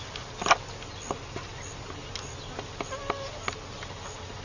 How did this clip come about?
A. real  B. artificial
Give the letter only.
A